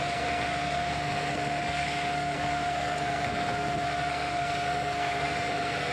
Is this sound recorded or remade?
remade